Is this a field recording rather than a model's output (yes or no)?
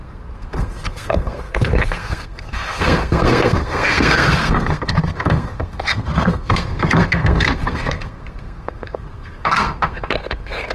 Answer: no